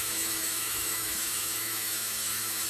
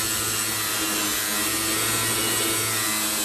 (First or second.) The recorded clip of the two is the second